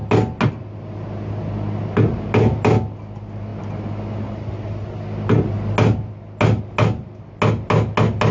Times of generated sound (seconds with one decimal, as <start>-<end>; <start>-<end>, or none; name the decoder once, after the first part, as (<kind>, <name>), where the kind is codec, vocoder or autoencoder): none